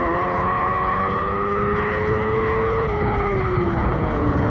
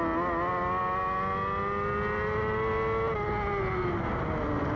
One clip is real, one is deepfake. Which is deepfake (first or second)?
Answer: first